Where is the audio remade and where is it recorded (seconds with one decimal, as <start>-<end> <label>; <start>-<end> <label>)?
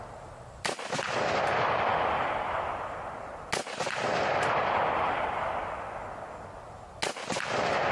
0.0-7.9 recorded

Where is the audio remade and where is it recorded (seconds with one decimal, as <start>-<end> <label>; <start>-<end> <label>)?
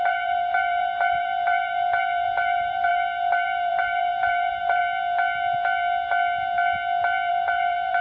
0.0-4.8 remade; 4.8-7.3 recorded; 7.3-8.0 remade